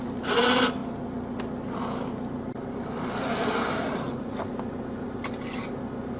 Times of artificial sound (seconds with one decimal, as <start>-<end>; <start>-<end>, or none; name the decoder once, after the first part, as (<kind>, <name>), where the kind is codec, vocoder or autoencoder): none